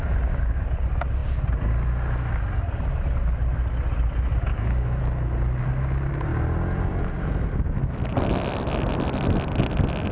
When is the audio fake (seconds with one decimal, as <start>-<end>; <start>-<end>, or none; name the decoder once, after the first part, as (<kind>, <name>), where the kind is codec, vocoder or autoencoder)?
4.5-5.0 (codec, DAC)